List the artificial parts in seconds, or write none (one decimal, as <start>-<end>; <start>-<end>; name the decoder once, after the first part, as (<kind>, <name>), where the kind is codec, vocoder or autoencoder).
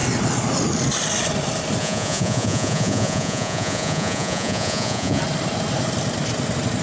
1.8-5.2 (vocoder, Vocos)